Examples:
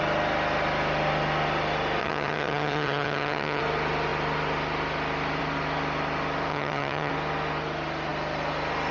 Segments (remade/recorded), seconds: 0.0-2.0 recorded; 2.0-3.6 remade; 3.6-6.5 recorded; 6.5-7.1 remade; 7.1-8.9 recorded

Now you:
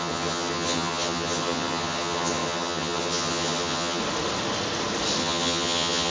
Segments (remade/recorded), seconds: 0.0-4.0 remade; 4.0-5.2 recorded; 5.2-6.1 remade

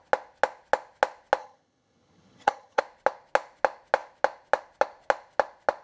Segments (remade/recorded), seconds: 0.0-1.4 recorded; 1.4-2.8 remade; 2.8-5.8 recorded